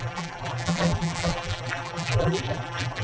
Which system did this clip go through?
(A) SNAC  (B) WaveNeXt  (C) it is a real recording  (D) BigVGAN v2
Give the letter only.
D